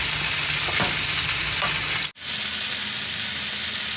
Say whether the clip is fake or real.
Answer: real